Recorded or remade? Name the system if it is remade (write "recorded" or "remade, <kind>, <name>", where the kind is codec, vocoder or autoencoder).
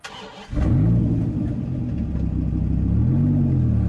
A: recorded